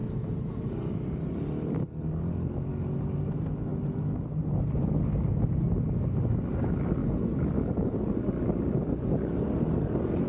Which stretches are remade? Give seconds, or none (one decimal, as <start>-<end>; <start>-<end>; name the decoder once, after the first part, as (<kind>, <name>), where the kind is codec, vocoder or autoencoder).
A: none